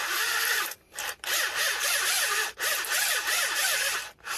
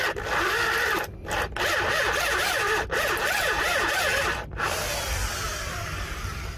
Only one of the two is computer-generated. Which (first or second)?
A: first